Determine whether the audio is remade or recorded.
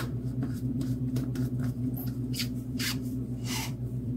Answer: remade